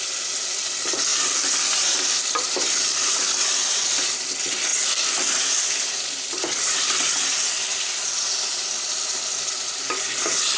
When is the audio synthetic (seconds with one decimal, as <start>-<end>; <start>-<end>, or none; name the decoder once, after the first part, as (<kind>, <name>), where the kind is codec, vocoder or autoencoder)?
none